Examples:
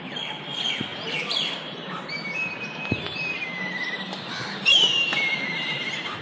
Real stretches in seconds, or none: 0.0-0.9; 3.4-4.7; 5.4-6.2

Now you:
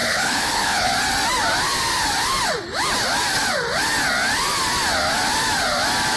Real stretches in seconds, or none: 0.9-6.2

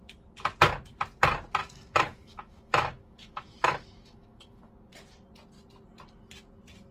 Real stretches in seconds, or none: 0.0-1.6; 4.7-6.9

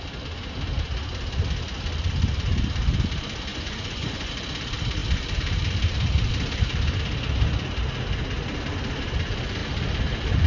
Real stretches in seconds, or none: 0.0-3.5; 4.3-10.5

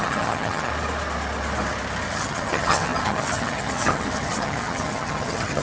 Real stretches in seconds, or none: 0.7-2.1

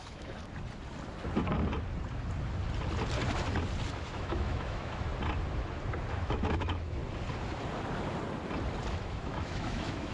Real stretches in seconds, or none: 0.4-4.0; 5.1-6.1; 7.0-8.9